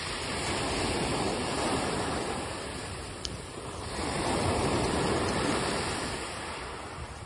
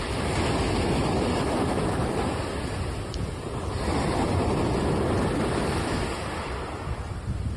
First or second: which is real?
second